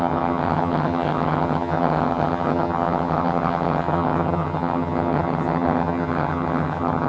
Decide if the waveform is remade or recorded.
remade